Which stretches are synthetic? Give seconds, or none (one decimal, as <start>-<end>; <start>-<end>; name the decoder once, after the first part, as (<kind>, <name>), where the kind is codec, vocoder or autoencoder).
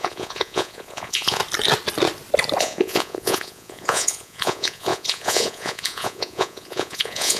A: 0.0-1.4 (vocoder, Vocos); 2.6-7.4